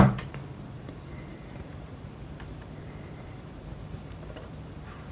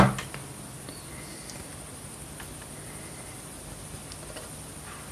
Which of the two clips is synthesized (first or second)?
first